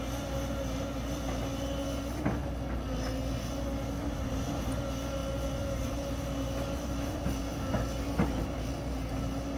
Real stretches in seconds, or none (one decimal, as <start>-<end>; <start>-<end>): 0.0-9.6